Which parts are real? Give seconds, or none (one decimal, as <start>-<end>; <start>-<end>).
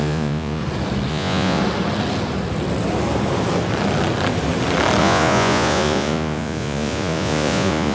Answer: 0.6-1.1; 1.6-5.0